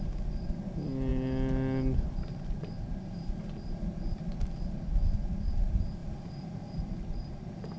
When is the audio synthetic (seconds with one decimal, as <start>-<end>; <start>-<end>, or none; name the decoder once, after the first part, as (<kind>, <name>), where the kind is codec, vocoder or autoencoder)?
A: none